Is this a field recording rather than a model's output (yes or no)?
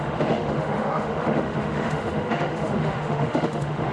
no